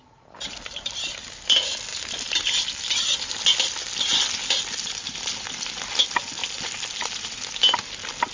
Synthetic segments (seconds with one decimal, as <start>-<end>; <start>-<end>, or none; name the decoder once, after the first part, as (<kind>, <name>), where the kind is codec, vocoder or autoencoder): none